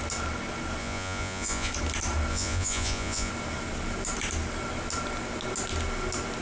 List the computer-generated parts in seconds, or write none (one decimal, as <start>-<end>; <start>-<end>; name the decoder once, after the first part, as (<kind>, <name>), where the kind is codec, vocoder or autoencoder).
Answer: 0.8-1.7 (vocoder, Vocos); 2.3-3.3